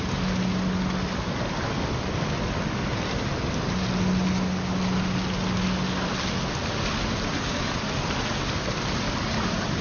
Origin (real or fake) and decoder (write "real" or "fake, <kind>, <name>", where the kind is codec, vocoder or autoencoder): real